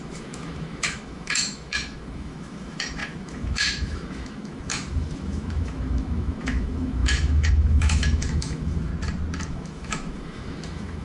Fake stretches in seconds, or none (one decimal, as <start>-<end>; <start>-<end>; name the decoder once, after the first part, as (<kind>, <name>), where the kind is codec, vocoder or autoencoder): 0.0-8.9 (autoencoder, DAC-VAE); 9.5-11.0

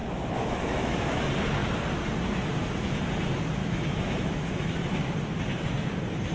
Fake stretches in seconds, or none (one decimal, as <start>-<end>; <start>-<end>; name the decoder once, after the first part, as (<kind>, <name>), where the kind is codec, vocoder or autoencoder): 0.0-1.2 (autoencoder, DAC-VAE); 3.6-5.1